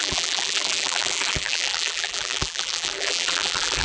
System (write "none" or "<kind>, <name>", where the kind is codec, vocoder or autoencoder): vocoder, BigVGAN v2